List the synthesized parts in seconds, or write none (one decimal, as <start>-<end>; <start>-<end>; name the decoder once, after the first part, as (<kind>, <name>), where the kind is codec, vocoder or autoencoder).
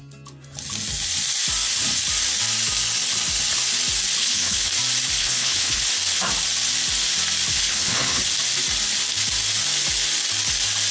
4.2-4.7 (codec, HILCodec); 5.2-5.9; 7.5-8.2